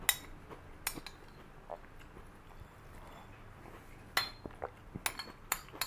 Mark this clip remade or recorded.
recorded